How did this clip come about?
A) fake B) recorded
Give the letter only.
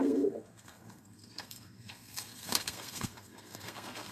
A